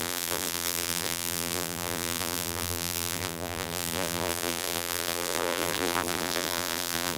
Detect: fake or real fake